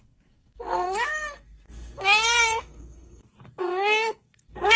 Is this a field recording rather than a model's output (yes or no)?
no